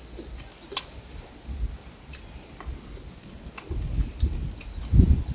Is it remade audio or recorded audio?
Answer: recorded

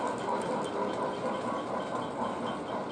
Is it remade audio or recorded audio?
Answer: recorded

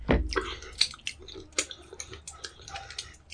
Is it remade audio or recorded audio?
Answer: recorded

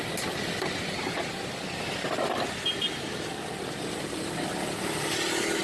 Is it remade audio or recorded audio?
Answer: recorded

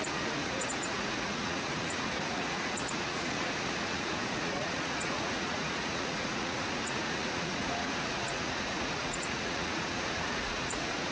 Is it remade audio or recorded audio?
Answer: remade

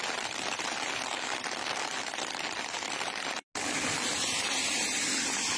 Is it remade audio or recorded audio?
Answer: recorded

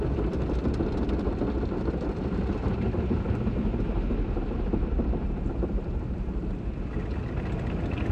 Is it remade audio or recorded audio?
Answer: recorded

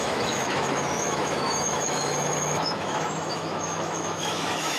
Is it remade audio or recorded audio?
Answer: remade